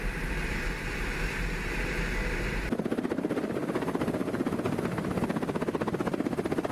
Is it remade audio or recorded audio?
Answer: recorded